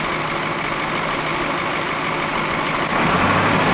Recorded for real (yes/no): yes